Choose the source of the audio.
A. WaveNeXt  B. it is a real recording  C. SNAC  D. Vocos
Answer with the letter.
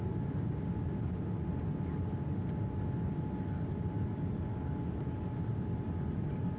B